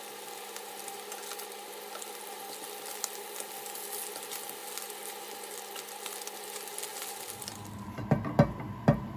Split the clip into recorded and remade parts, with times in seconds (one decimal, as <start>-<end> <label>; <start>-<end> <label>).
0.0-9.2 recorded